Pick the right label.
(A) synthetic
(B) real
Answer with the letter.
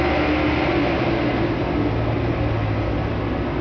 B